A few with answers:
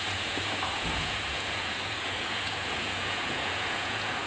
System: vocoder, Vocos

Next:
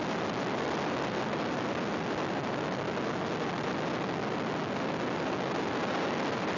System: none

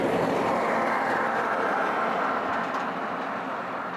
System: none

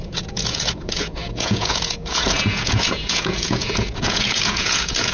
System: vocoder, Vocos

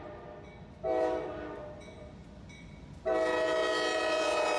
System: none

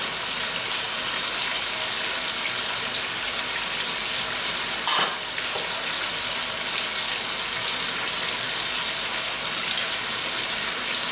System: none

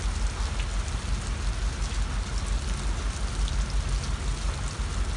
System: none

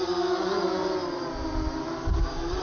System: none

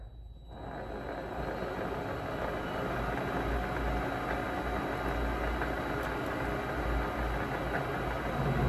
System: none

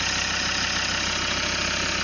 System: none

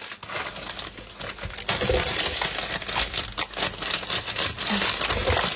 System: none